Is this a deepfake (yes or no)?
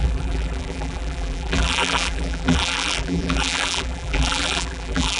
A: yes